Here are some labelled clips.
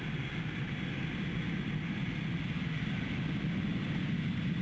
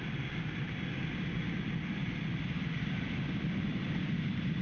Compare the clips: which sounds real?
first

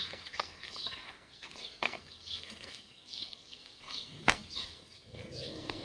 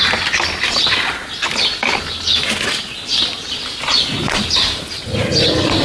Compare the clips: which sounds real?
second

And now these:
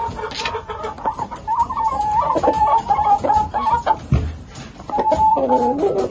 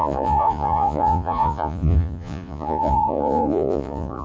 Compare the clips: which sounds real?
first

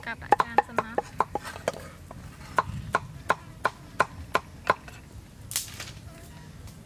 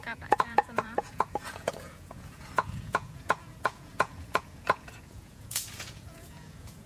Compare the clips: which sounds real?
first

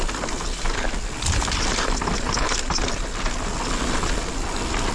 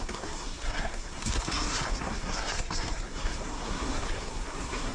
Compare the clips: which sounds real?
first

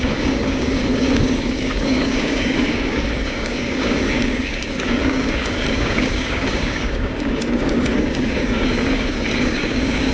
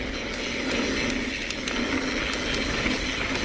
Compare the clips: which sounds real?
second